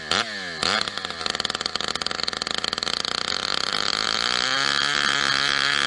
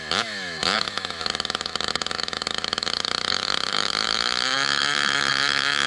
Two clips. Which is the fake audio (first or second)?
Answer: second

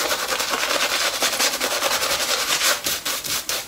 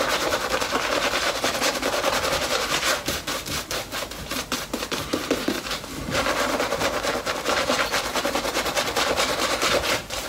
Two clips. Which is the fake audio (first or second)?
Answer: second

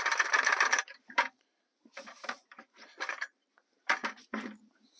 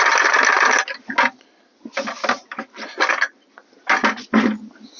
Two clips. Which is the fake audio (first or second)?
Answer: first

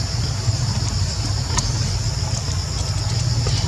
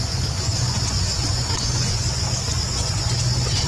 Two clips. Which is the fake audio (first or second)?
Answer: second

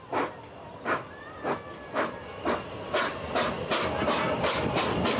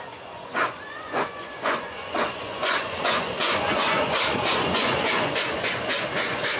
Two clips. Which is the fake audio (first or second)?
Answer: second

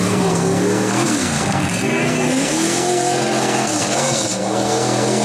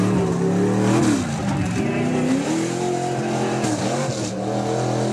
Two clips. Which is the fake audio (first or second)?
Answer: first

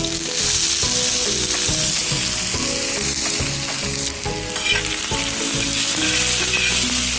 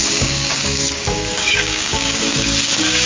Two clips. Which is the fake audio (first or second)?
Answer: second